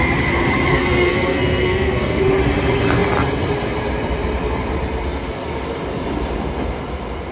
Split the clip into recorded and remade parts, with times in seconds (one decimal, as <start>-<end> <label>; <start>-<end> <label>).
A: 0.0-0.7 recorded; 0.7-2.3 remade; 2.3-7.3 recorded

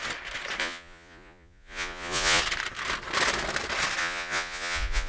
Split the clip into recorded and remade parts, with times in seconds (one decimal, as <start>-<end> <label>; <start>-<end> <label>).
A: 0.0-0.6 recorded; 0.6-2.4 remade; 2.4-4.0 recorded; 4.0-5.1 remade

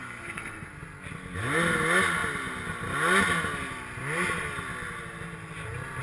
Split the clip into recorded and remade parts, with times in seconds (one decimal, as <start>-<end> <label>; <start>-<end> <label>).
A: 0.0-0.7 remade; 0.7-6.0 recorded

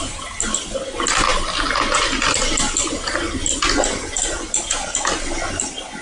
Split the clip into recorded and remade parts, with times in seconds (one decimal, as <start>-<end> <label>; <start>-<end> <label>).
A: 0.0-6.0 recorded

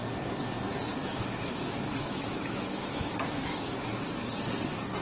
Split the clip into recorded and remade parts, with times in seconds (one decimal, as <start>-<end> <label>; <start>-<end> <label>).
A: 0.0-1.0 recorded; 1.0-3.9 remade; 3.9-5.0 recorded

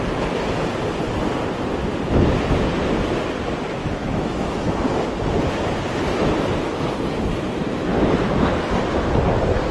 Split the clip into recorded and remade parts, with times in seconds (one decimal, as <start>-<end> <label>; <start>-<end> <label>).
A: 0.0-3.8 recorded; 3.8-4.6 remade; 4.6-9.7 recorded

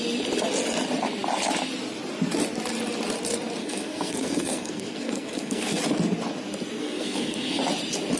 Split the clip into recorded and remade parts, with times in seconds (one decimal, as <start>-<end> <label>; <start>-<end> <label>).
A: 0.0-3.6 recorded; 3.6-5.8 remade; 5.8-6.8 recorded; 6.8-7.6 remade; 7.6-8.2 recorded

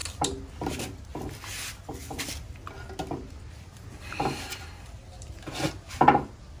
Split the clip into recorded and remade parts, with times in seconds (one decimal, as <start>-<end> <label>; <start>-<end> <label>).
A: 0.0-6.6 recorded